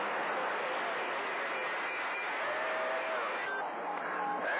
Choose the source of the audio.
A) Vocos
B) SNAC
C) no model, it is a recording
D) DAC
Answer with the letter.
C